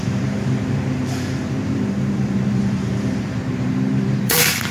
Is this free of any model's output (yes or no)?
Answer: no